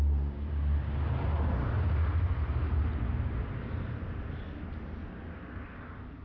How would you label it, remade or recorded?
recorded